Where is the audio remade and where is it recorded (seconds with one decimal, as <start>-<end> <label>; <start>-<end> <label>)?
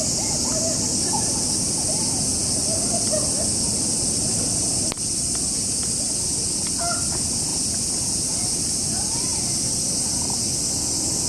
0.0-11.3 recorded